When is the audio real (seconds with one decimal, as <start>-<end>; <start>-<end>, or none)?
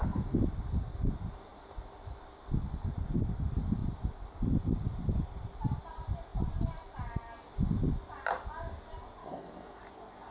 0.0-9.2; 9.8-10.3